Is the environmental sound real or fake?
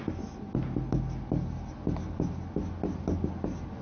real